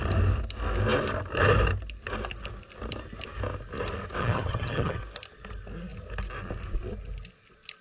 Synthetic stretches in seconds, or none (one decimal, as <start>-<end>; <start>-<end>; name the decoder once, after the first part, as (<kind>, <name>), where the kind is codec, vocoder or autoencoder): 4.2-5.0 (vocoder, HiFi-GAN)